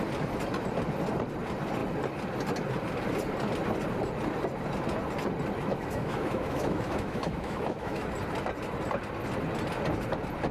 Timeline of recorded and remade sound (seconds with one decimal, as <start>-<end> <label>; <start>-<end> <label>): 0.0-5.7 recorded; 5.7-8.1 remade; 8.1-10.5 recorded